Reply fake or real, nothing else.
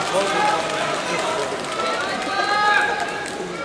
real